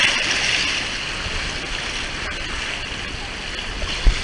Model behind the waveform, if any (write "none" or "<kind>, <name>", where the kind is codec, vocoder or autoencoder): none